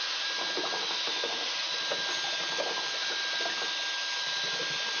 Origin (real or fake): real